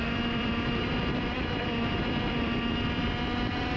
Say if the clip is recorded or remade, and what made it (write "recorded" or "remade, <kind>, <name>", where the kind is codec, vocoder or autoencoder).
remade, vocoder, BigVGAN v2